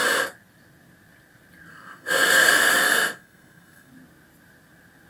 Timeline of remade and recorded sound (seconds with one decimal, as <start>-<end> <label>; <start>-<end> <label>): 0.0-1.7 recorded; 1.7-3.9 remade; 3.9-5.1 recorded